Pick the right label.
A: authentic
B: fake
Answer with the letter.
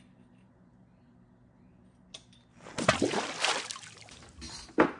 A